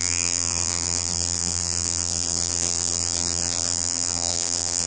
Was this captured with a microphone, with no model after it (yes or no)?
no